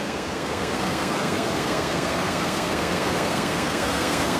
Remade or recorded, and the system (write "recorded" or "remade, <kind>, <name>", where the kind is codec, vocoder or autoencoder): remade, codec, SNAC